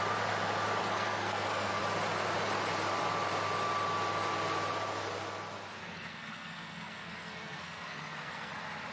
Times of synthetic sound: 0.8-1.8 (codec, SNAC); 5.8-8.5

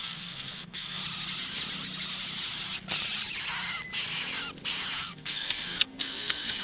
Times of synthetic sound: 0.0-1.0 (codec, SNAC); 5.0-6.6

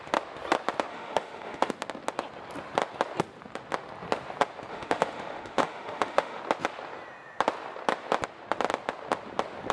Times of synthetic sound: 0.9-1.7 (autoencoder, DAC-VAE); 4.7-6.4

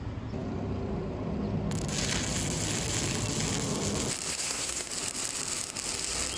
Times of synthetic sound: 4.3-4.9 (codec, SNAC)

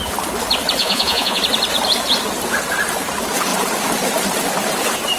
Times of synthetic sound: 0.8-1.4 (vocoder, Vocos)

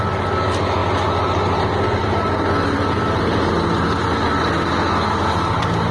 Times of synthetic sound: none

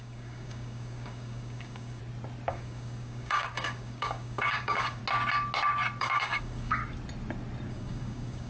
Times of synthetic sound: 0.0-2.0 (codec, DAC); 2.5-5.0; 6.0-6.8; 7.7-8.5